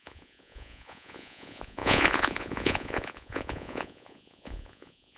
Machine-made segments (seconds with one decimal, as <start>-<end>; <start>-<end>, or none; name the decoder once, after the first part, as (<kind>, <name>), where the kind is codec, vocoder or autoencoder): 0.0-5.2 (vocoder, Vocos)